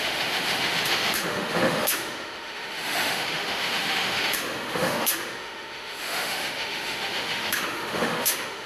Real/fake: fake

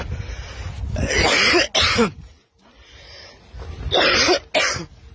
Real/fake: real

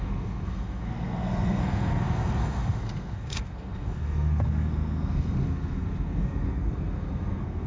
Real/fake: fake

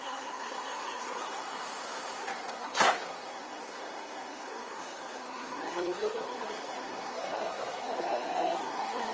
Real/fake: fake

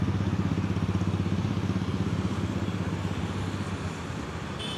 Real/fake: real